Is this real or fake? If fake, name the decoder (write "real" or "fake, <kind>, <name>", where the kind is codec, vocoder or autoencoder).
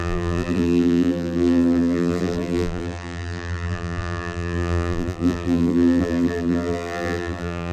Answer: fake, vocoder, BigVGAN v2